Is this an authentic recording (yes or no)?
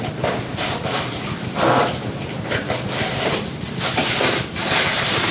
no